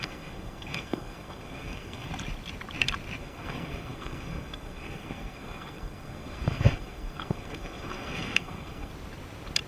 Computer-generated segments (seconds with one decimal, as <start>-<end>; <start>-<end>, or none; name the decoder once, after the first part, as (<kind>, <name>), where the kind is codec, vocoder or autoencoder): 0.0-2.1 (codec, SNAC); 3.2-8.9